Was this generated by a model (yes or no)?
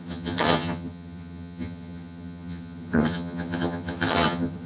yes